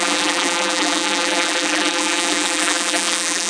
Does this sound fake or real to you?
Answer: fake